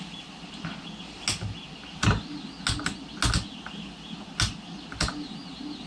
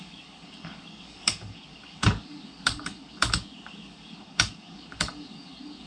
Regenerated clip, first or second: second